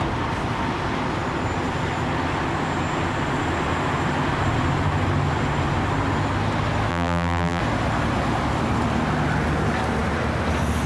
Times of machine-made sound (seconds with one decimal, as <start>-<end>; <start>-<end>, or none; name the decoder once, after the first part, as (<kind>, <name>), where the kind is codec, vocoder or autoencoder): 6.9-7.6 (vocoder, BigVGAN v2)

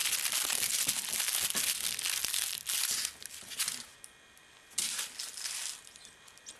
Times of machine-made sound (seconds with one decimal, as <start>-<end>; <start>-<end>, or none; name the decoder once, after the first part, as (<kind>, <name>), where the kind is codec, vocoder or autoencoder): 0.0-1.1 (vocoder, BigVGAN v2); 2.2-2.9

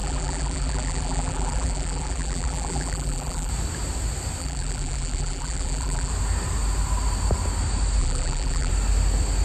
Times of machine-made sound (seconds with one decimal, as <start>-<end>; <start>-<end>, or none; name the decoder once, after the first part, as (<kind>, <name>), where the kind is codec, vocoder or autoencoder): 0.0-3.5 (vocoder, BigVGAN v2); 4.4-6.1; 8.0-8.7